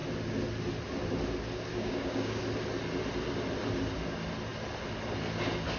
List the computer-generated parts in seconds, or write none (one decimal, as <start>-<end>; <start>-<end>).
1.7-2.4